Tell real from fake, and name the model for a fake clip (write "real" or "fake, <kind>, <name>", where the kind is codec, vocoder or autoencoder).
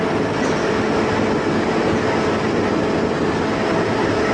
real